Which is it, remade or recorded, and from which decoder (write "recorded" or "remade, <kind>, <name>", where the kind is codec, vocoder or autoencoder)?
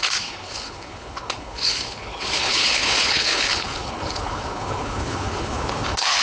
remade, codec, HILCodec